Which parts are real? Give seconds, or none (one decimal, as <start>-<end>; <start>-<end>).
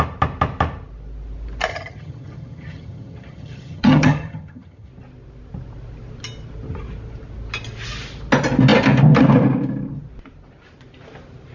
0.0-1.7; 4.9-11.5